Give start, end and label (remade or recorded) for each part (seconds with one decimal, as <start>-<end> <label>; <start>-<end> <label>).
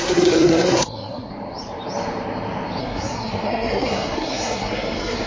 0.0-1.3 remade; 1.3-2.8 recorded; 2.8-5.3 remade